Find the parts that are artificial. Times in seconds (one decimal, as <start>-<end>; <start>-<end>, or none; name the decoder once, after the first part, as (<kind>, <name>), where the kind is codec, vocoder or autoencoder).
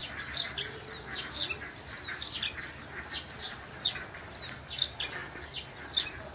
none